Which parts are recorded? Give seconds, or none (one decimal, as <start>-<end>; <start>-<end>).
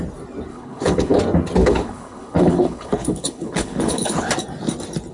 0.0-0.5; 1.2-1.6; 4.3-5.1